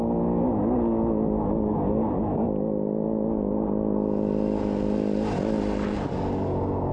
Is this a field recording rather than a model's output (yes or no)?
yes